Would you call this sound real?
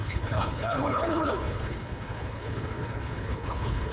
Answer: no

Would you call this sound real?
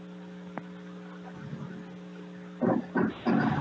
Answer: yes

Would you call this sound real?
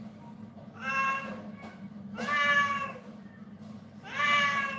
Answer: yes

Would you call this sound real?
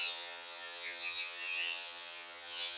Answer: no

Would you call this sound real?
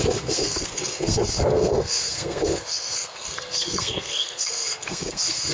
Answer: no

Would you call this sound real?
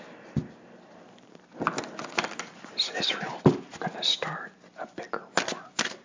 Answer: yes